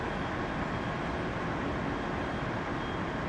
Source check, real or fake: real